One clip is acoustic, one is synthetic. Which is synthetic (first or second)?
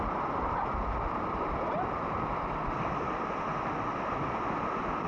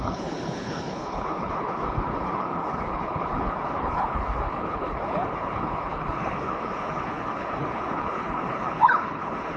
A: second